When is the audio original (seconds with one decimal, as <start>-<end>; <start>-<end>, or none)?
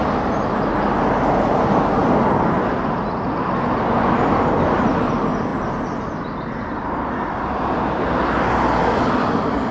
0.0-9.7